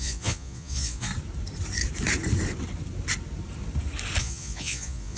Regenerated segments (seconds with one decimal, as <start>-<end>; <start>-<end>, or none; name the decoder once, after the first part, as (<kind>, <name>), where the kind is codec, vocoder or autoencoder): 0.0-1.1 (vocoder, Vocos); 4.2-5.2